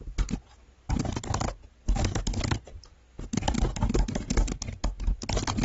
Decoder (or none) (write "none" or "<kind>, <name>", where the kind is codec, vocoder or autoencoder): none